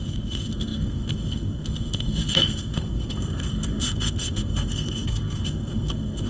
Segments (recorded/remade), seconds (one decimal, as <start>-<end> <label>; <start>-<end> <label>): 0.0-6.3 remade